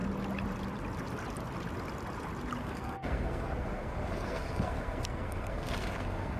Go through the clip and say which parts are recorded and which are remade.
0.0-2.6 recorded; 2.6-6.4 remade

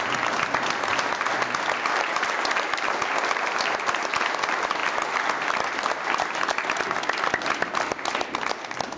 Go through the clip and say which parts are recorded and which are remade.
0.0-9.0 recorded

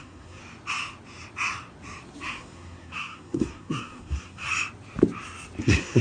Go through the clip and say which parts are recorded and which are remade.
0.0-0.4 remade; 0.4-2.3 recorded; 2.3-4.5 remade; 4.5-5.6 recorded; 5.6-6.0 remade

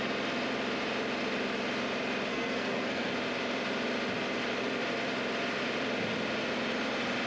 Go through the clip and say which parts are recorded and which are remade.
0.0-2.3 recorded; 2.3-3.1 remade; 3.1-7.3 recorded

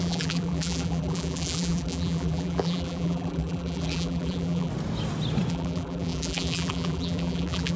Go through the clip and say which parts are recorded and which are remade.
0.0-4.7 remade; 4.7-5.5 recorded; 5.5-7.8 remade

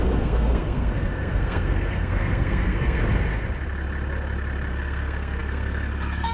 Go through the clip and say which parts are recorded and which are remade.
0.0-3.0 remade; 3.0-4.7 recorded; 4.7-6.3 remade